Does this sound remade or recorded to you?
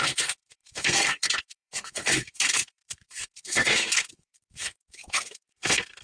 remade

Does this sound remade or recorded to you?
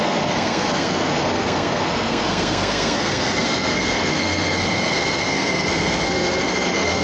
remade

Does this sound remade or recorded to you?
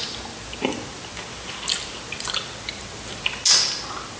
recorded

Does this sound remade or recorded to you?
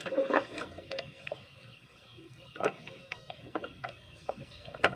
remade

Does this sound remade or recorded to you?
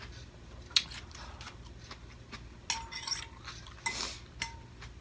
recorded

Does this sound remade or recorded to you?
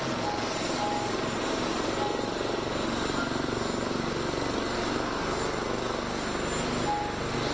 recorded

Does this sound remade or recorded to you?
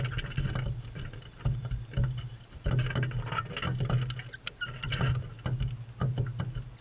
recorded